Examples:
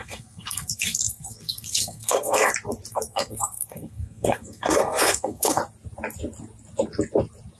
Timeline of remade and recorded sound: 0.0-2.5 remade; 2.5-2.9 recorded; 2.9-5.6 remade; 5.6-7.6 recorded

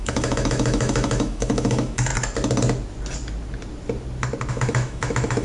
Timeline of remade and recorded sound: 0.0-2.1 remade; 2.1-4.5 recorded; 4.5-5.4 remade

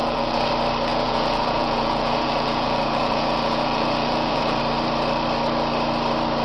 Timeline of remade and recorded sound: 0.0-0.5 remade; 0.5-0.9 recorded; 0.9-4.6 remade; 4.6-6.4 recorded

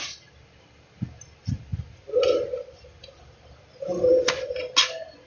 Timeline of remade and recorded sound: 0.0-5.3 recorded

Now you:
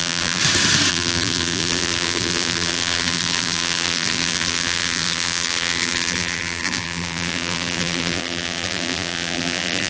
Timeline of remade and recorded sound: 0.0-0.4 remade; 0.4-0.9 recorded; 0.9-9.9 remade

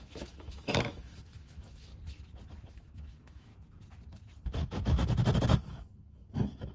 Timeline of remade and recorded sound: 0.0-1.9 remade; 1.9-2.7 recorded; 2.7-3.5 remade; 3.5-5.6 recorded; 5.6-6.7 remade

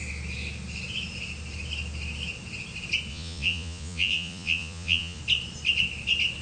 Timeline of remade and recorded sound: 0.0-3.1 recorded; 3.1-5.2 remade; 5.2-6.4 recorded